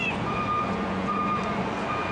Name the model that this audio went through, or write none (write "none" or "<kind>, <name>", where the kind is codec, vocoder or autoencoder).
vocoder, Vocos